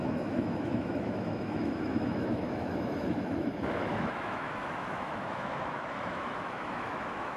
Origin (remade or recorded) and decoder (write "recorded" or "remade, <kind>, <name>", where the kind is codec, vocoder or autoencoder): remade, autoencoder, DAC-VAE